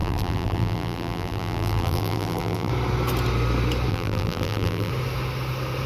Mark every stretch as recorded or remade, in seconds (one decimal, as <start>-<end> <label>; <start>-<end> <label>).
0.0-2.7 remade; 2.7-3.9 recorded; 3.9-4.9 remade; 4.9-5.9 recorded